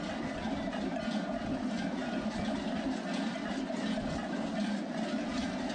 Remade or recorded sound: recorded